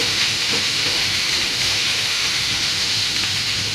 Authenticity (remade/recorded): remade